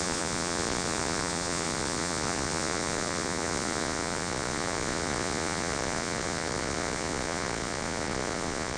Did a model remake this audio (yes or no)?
yes